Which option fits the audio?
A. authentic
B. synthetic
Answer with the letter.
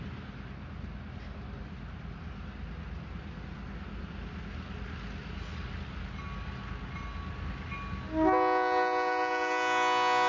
A